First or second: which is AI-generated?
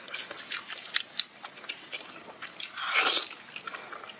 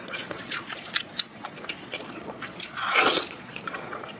second